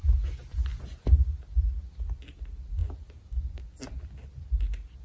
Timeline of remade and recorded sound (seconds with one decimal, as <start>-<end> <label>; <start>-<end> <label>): 0.0-5.0 recorded